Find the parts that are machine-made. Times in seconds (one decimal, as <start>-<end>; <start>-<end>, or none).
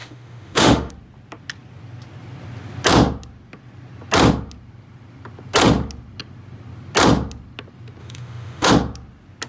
0.0-0.9; 8.0-8.7